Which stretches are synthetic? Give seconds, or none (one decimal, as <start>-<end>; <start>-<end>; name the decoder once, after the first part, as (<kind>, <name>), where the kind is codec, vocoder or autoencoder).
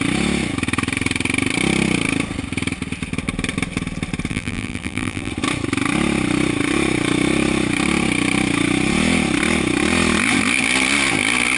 4.3-5.3 (vocoder, BigVGAN v2)